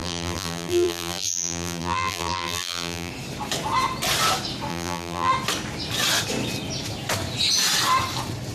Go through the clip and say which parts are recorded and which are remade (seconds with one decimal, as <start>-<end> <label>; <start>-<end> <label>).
0.0-3.1 remade; 3.1-4.7 recorded; 4.7-5.3 remade; 5.3-8.5 recorded